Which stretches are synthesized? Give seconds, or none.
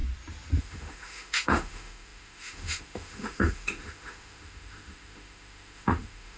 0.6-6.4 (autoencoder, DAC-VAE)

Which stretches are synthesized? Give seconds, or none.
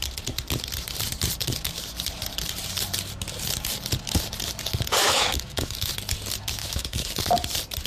5.0-5.9 (autoencoder, DAC-VAE); 6.6-7.2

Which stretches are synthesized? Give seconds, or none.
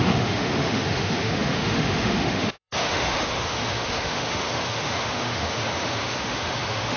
0.0-7.0 (autoencoder, DAC-VAE)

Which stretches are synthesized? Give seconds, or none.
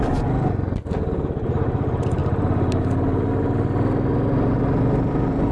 none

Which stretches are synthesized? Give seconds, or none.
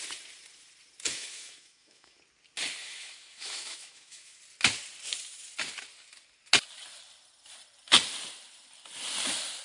1.1-2.2 (autoencoder, DAC-VAE); 2.8-4.4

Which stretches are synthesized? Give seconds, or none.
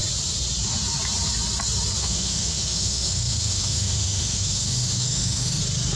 2.0-5.6 (autoencoder, DAC-VAE)